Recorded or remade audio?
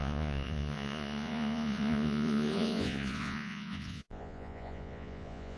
remade